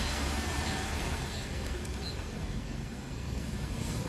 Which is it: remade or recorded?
remade